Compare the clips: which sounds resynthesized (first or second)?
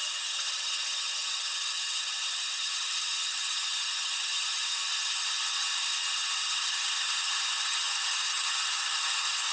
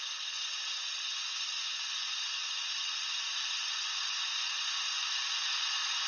first